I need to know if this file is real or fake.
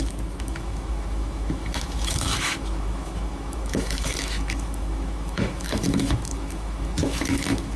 fake